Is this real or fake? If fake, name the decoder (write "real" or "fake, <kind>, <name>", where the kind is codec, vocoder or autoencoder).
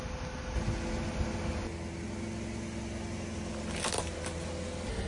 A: real